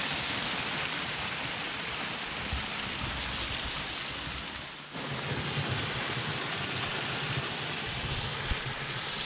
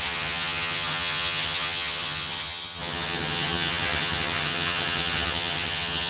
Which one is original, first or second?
first